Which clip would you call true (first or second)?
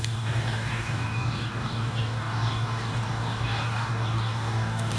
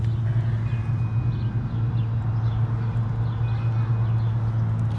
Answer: second